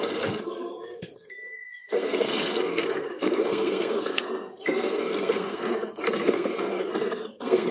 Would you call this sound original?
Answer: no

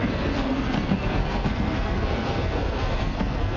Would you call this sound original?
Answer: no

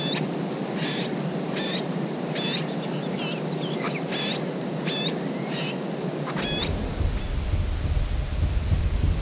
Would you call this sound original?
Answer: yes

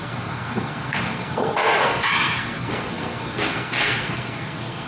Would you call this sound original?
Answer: no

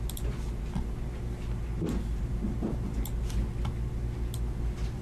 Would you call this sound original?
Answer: yes